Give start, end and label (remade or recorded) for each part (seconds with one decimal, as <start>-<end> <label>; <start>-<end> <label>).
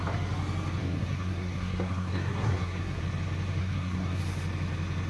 0.0-0.8 recorded; 0.8-3.0 remade; 3.0-3.6 recorded; 3.6-4.2 remade; 4.2-5.1 recorded